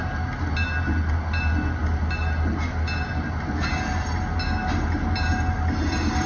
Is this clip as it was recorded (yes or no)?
yes